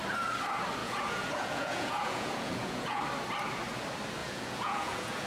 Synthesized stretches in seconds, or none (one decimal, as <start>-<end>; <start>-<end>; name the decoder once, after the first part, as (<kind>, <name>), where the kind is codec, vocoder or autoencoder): 0.8-3.0 (vocoder, Vocos); 4.2-5.3